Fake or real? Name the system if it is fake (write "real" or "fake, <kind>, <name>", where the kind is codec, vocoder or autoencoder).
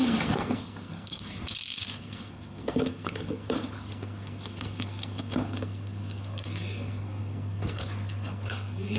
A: fake, codec, SNAC